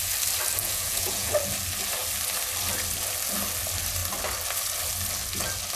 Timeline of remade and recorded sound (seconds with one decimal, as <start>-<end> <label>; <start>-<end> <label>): 0.0-0.6 recorded; 0.6-1.3 remade; 1.3-5.8 recorded